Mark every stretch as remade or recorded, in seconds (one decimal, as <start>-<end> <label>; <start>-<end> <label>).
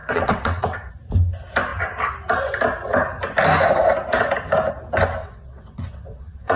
0.0-0.9 remade; 0.9-5.2 recorded; 5.2-6.6 remade